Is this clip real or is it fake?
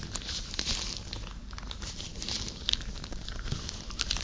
real